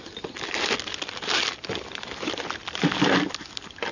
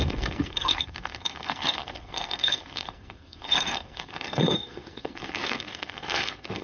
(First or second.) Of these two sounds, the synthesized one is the second